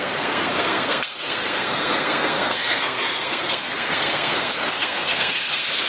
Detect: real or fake fake